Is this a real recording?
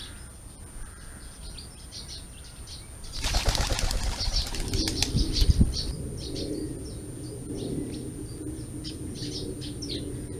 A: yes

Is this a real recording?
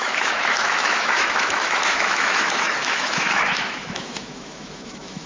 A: no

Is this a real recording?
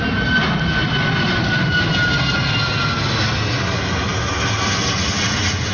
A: yes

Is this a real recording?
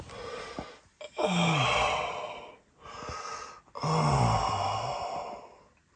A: yes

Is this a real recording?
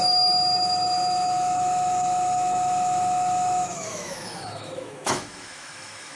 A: no